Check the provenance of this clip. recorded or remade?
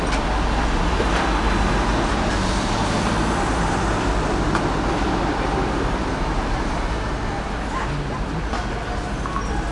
recorded